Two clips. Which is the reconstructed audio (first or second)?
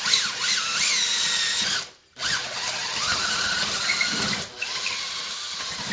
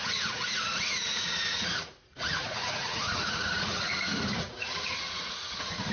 second